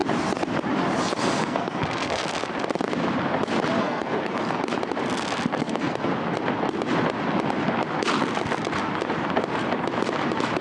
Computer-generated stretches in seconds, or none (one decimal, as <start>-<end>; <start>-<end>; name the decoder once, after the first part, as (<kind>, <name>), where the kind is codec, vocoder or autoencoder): 1.2-2.2 (codec, SNAC); 3.8-4.6; 5.6-6.1